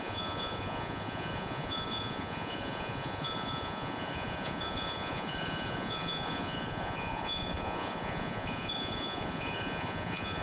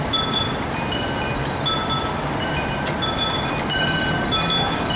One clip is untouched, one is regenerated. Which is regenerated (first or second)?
first